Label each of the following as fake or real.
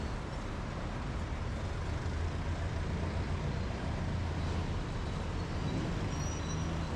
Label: real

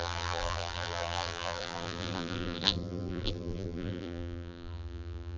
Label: fake